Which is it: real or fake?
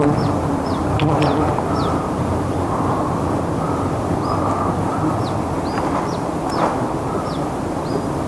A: real